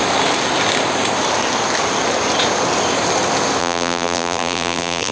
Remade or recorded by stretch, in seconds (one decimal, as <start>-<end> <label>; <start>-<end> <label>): 0.0-3.6 recorded; 3.6-5.1 remade